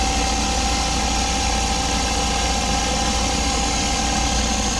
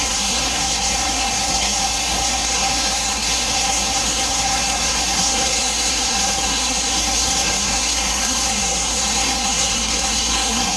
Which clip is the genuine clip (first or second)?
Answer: first